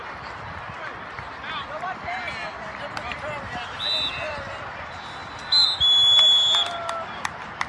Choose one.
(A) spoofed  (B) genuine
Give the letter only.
B